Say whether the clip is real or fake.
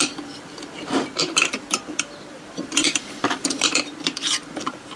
fake